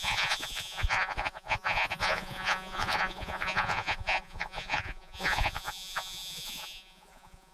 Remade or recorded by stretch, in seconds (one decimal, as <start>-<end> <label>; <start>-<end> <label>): 0.0-7.5 remade

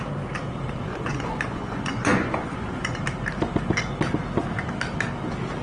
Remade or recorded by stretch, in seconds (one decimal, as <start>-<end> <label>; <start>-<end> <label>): 0.0-0.9 recorded; 0.9-3.0 remade; 3.0-5.6 recorded